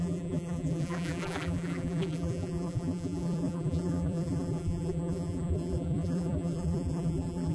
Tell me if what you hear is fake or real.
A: fake